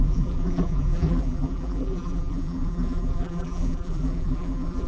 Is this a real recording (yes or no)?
no